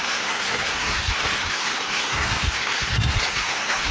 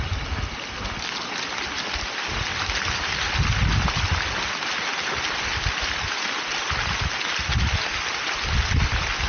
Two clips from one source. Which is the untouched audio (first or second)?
second